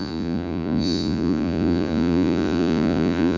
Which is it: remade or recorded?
remade